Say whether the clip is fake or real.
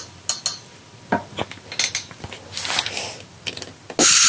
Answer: real